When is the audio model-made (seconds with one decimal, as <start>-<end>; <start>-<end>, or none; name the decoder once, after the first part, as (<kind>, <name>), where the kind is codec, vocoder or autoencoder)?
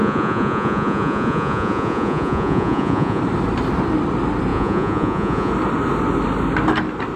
0.0-3.2 (vocoder, Vocos); 4.5-5.5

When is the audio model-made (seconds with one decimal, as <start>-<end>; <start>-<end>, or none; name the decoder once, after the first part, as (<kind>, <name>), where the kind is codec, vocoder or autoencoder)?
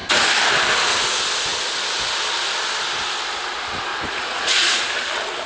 3.9-4.8 (vocoder, Vocos)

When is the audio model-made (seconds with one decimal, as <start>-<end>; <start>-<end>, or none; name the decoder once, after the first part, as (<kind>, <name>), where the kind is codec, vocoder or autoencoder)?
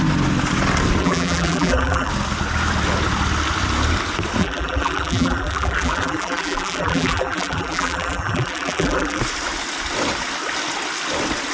1.0-2.1 (vocoder, BigVGAN v2); 4.4-9.2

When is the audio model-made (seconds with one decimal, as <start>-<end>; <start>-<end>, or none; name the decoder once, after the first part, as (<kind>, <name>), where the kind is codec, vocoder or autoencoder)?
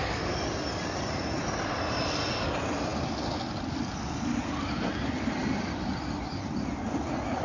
none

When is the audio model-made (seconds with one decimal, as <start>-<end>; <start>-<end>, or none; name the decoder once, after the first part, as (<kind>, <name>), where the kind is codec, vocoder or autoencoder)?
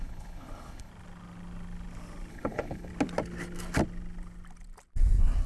0.0-0.9 (codec, HILCodec); 2.3-2.9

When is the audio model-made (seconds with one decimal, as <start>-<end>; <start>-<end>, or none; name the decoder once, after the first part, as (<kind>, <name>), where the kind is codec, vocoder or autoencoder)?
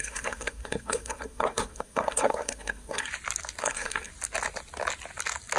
0.0-3.1 (codec, SNAC); 3.6-4.1